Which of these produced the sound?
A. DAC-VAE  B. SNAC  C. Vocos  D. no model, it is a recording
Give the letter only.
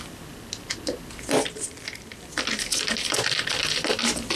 D